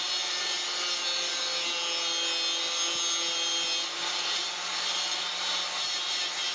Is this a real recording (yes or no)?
yes